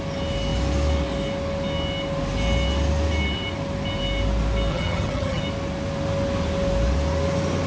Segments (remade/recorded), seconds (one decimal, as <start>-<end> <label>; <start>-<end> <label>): 0.0-4.7 recorded; 4.7-5.4 remade; 5.4-7.7 recorded